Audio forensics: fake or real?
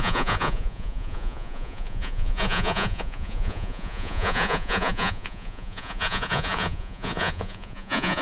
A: fake